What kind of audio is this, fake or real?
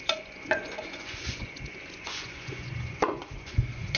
fake